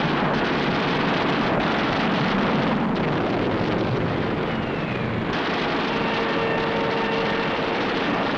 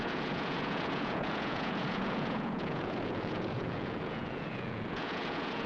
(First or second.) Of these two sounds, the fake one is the second